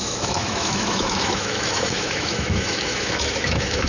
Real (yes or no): no